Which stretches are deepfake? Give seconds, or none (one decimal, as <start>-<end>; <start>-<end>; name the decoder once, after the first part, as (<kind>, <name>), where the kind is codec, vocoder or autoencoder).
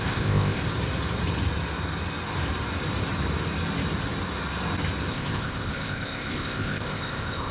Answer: 0.0-0.6 (codec, ZipCodec); 5.1-7.5